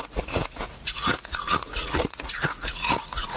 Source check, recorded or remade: remade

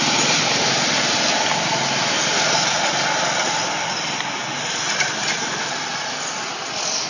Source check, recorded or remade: recorded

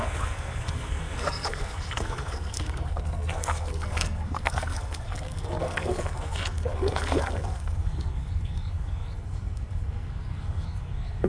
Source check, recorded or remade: remade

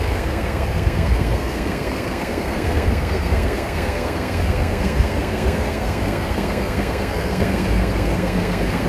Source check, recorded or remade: remade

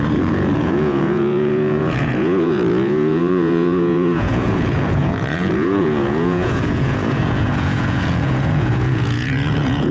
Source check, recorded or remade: remade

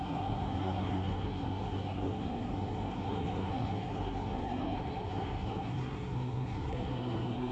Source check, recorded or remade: remade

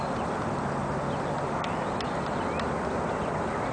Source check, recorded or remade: recorded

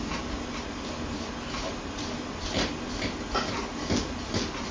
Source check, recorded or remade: recorded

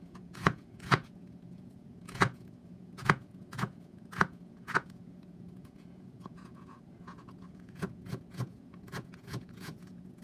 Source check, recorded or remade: remade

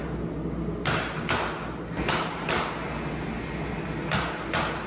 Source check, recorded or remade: recorded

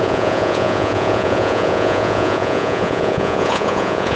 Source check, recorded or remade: remade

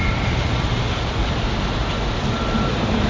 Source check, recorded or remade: recorded